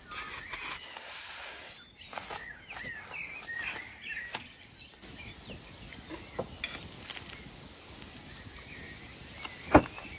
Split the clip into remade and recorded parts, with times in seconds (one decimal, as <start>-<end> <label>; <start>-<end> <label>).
0.0-10.2 recorded